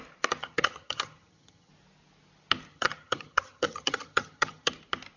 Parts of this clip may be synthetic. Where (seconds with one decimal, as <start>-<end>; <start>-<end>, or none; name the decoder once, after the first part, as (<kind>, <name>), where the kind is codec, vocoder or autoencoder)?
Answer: 0.4-1.7 (vocoder, HiFi-GAN); 2.7-4.7